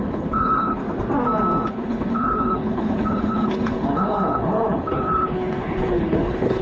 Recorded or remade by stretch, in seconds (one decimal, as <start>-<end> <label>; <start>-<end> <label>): 0.0-0.8 remade; 0.8-1.7 recorded; 1.7-6.6 remade